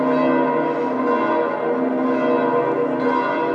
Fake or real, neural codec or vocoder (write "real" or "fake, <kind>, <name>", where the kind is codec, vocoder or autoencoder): real